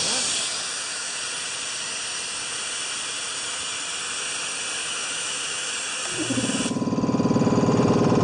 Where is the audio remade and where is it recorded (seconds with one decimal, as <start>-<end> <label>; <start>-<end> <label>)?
0.0-0.7 recorded; 0.7-1.2 remade; 1.2-4.8 recorded; 4.8-5.7 remade; 5.7-8.2 recorded